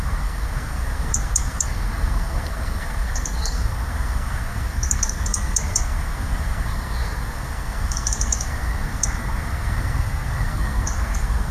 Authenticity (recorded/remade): remade